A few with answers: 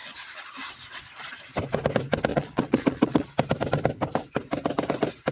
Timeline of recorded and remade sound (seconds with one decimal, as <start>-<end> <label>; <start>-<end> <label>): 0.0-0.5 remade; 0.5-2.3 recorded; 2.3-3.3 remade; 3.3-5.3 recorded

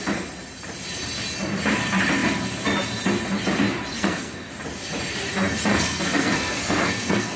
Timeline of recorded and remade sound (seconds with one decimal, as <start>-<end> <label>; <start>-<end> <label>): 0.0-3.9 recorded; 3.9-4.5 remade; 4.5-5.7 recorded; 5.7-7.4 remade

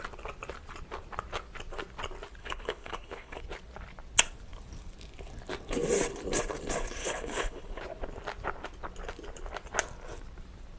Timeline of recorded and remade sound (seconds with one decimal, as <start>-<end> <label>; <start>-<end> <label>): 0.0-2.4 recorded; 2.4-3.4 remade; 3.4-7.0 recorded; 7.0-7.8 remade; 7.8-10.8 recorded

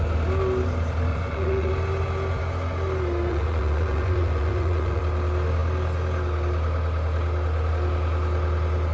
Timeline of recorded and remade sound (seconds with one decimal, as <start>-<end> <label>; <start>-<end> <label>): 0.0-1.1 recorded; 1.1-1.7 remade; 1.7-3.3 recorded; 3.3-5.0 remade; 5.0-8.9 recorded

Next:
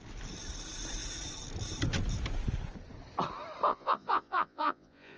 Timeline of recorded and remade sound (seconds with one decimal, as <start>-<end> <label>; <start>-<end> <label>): 0.0-3.7 recorded; 3.7-5.2 remade

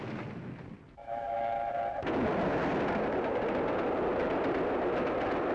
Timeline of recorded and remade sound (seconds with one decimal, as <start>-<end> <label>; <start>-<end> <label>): 0.0-1.0 recorded; 1.0-1.7 remade; 1.7-5.5 recorded